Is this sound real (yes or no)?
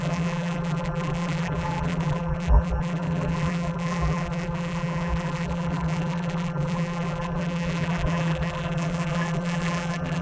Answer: no